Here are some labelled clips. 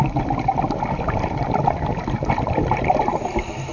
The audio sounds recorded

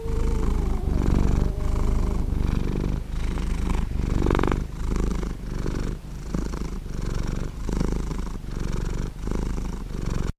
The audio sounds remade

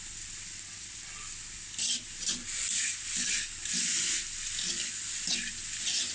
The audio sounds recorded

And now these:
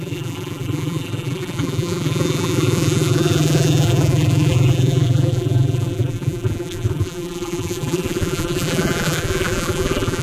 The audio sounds remade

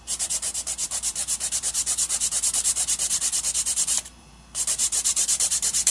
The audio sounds remade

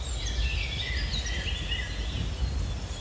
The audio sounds recorded